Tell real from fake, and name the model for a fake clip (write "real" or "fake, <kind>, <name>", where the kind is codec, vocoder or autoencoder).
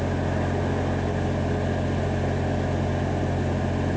real